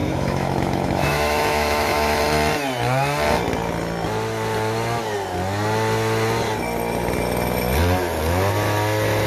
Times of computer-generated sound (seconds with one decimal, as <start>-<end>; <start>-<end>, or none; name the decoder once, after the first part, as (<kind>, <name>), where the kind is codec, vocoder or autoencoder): 0.0-2.2 (autoencoder, DAC-VAE)

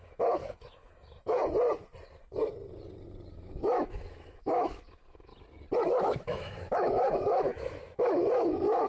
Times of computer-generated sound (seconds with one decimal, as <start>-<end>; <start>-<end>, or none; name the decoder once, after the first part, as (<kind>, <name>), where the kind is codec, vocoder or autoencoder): 0.0-1.4 (autoencoder, DAC-VAE); 3.3-5.3; 5.9-8.9

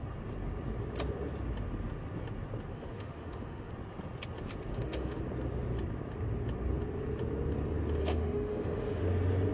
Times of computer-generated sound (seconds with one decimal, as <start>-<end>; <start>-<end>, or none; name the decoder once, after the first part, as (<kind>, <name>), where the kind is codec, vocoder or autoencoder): 2.7-3.7 (autoencoder, DAC-VAE); 4.7-5.2; 8.0-9.0

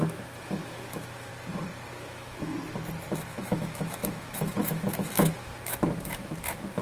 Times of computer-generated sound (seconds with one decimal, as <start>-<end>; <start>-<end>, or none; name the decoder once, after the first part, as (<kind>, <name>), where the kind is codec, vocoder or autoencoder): 0.0-1.3 (autoencoder, DAC-VAE); 1.9-2.5; 3.1-6.8

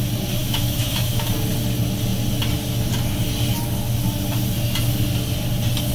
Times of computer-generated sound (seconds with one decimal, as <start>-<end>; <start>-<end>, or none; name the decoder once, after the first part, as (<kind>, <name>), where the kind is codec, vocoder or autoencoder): 0.4-1.3 (autoencoder, DAC-VAE)

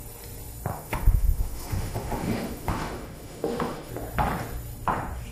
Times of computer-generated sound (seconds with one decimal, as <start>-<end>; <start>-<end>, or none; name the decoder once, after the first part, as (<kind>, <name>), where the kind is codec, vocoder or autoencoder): 0.7-3.9 (autoencoder, DAC-VAE)

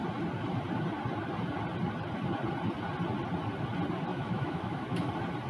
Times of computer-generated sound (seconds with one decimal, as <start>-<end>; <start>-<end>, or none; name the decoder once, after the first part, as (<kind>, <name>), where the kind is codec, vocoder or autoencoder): 4.1-5.1 (autoencoder, DAC-VAE)